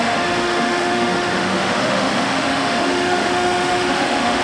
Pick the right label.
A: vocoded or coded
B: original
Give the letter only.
A